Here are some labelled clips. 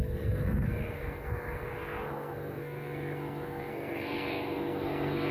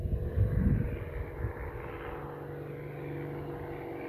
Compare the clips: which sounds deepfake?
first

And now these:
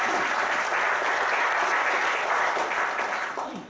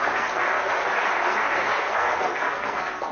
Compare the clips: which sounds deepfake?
second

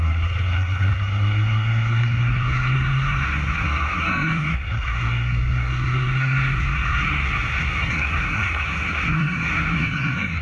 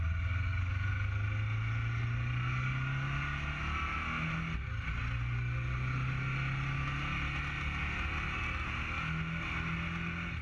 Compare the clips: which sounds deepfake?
first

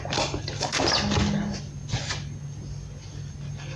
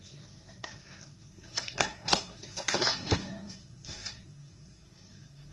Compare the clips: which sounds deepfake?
second